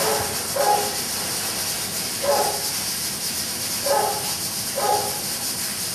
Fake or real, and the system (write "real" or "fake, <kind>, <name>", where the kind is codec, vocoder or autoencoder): real